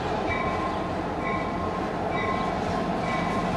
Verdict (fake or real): real